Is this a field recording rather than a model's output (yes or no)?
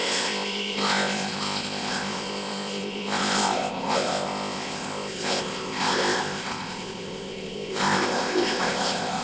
no